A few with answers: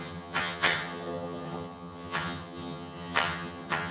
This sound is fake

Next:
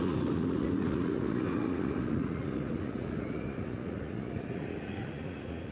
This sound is fake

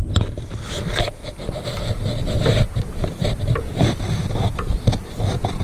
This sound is real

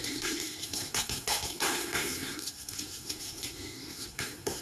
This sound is fake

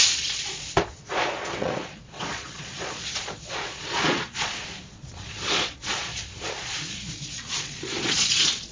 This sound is fake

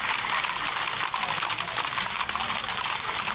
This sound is fake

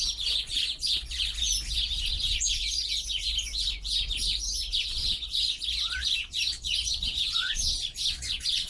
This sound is fake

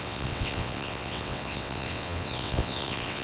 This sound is fake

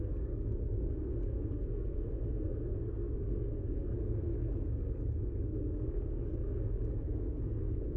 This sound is fake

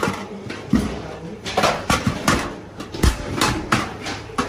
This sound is fake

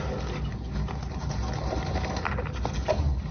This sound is real